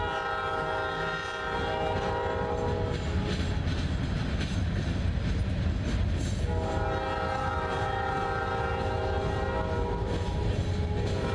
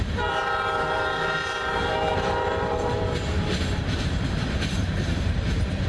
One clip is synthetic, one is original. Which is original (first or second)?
first